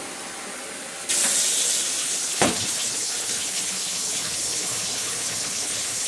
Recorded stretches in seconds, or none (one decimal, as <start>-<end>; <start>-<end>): 0.0-2.0